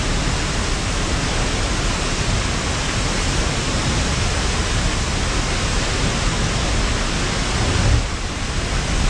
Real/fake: real